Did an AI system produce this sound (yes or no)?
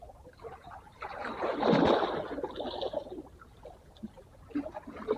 no